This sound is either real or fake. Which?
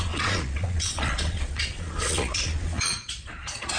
fake